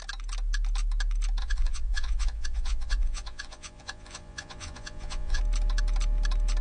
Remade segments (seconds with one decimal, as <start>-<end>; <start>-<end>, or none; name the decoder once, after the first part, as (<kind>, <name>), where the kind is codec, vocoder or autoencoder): 1.4-5.4 (vocoder, Vocos)